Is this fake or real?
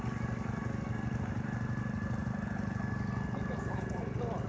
real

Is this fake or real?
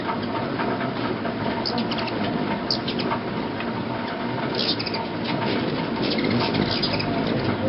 real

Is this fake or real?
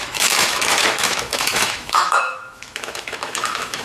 fake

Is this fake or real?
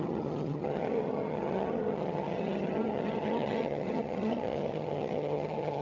fake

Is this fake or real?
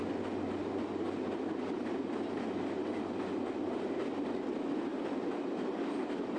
real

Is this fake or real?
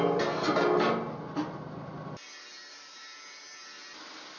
real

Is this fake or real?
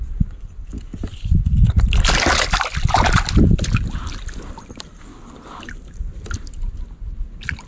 real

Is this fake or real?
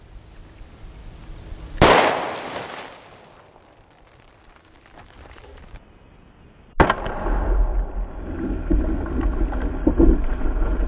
real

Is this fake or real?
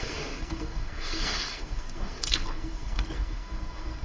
fake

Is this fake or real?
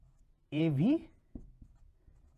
fake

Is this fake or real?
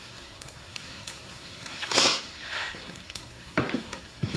fake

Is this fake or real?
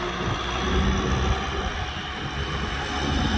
real